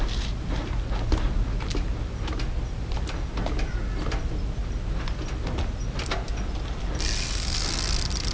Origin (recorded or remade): recorded